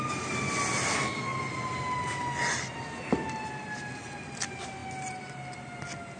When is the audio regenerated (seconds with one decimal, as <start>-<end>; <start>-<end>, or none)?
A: none